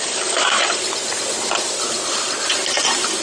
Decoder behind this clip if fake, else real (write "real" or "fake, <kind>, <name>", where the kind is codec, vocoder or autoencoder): real